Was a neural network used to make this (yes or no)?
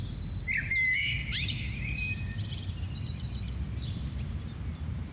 no